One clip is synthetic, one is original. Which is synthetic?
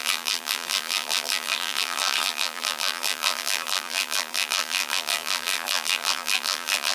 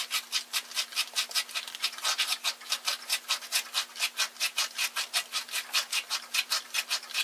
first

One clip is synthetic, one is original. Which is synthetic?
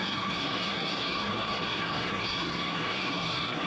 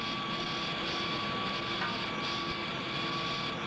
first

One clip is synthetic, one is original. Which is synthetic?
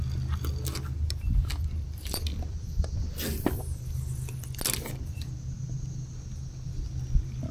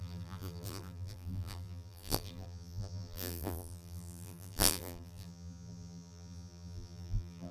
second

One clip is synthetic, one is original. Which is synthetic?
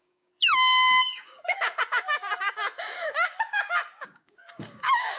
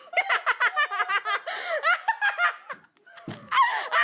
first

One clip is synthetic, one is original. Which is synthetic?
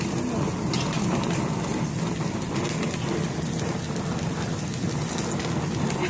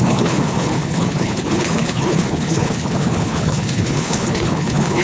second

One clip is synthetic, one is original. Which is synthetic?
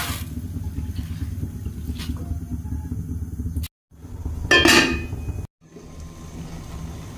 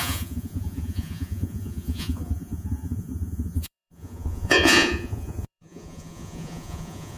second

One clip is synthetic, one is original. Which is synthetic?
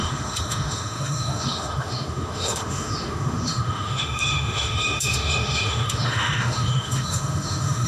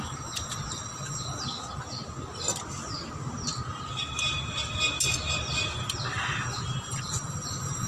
first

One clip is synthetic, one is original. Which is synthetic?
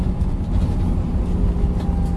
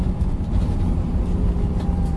second